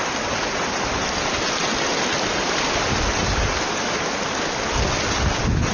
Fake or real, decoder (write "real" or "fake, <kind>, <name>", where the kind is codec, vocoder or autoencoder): real